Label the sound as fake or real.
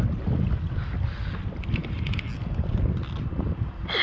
real